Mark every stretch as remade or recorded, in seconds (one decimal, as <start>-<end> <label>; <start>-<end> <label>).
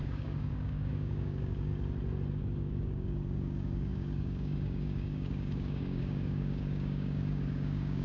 0.0-1.7 remade; 1.7-2.3 recorded; 2.3-8.0 remade